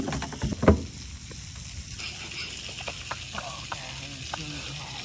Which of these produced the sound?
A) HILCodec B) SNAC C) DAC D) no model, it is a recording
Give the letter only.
D